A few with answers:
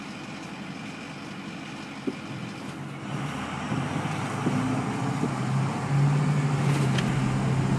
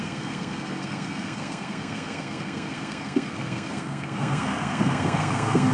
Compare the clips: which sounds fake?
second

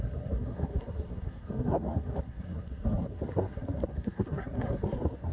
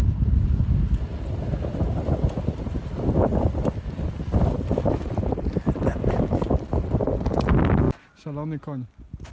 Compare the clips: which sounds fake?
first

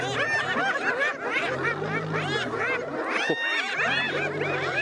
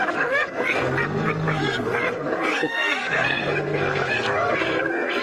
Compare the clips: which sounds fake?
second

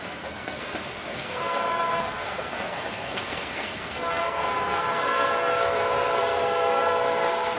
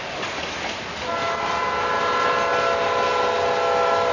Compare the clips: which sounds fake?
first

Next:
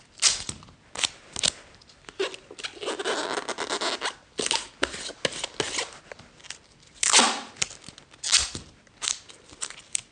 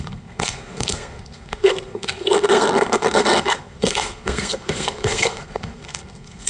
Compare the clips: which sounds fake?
second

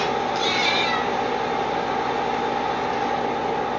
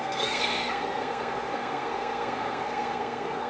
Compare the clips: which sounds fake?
second